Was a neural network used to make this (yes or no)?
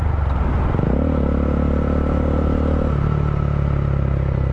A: no